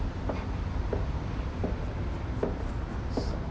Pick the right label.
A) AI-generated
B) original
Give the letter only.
B